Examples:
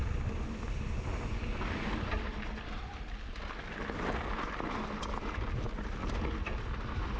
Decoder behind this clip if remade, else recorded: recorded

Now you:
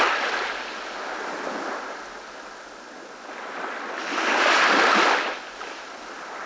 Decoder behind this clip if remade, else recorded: recorded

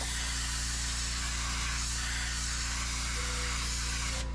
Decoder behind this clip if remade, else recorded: recorded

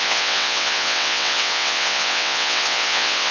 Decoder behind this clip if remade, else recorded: remade, vocoder, WaveNeXt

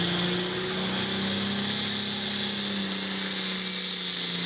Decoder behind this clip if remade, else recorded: recorded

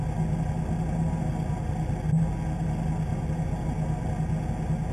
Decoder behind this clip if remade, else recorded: recorded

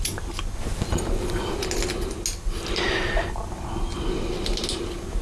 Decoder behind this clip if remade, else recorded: recorded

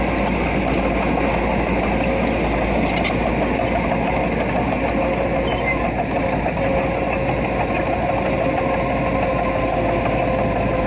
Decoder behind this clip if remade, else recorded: recorded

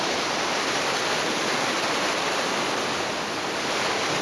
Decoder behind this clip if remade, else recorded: recorded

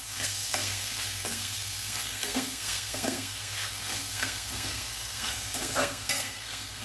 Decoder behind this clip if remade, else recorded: remade, codec, SNAC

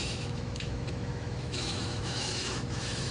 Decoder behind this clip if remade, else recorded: remade, autoencoder, DAC-VAE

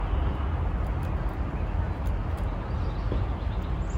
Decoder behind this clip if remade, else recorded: recorded